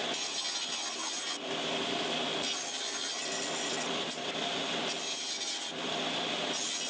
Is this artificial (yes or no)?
no